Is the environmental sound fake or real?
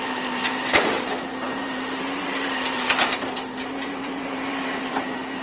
fake